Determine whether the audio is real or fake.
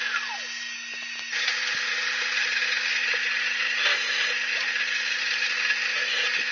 real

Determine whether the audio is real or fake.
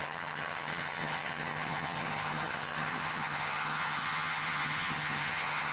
fake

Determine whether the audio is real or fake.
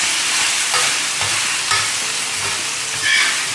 real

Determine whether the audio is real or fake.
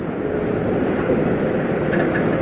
real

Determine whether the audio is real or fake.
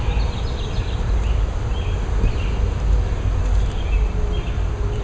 real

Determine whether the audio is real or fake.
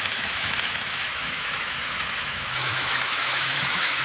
fake